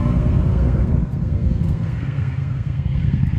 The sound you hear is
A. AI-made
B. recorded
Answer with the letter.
A